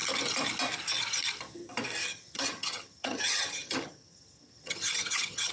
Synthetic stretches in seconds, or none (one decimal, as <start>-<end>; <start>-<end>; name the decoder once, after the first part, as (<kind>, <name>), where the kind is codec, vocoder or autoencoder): 2.0-5.5 (vocoder, HiFi-GAN)